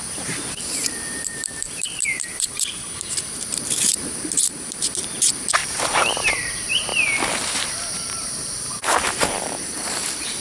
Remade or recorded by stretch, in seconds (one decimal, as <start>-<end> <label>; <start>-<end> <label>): 0.0-6.9 remade; 6.9-7.6 recorded; 7.6-10.4 remade